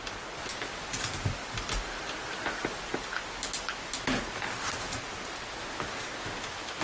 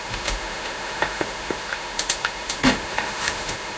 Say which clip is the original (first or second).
first